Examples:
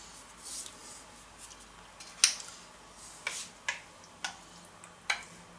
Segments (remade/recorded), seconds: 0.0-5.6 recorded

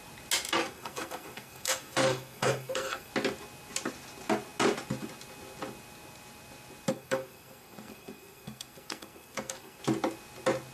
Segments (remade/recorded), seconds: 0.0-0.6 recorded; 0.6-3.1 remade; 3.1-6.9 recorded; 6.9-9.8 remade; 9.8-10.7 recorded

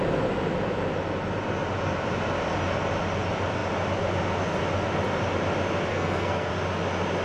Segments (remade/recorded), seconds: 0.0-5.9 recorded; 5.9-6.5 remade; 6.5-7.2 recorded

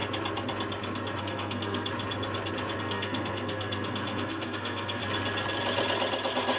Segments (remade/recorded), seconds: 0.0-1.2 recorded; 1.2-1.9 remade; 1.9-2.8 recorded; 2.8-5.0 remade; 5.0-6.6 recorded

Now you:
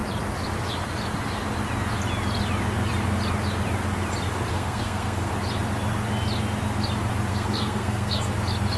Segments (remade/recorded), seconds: 0.0-4.5 recorded; 4.5-5.3 remade; 5.3-7.3 recorded; 7.3-8.3 remade; 8.3-8.8 recorded